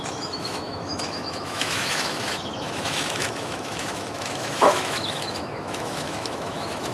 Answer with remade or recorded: remade